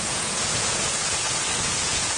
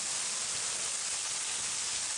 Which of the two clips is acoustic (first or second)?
second